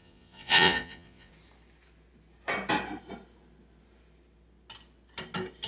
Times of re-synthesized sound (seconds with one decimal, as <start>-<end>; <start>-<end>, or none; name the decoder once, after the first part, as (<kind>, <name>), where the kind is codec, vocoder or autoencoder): 0.0-1.3 (vocoder, Vocos)